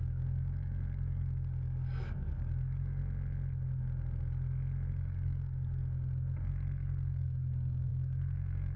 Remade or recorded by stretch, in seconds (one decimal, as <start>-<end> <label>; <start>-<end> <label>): 0.0-3.0 remade; 3.0-4.9 recorded; 4.9-5.8 remade; 5.8-6.5 recorded; 6.5-8.8 remade